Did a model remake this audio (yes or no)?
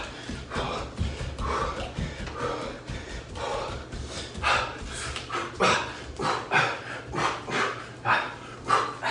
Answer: no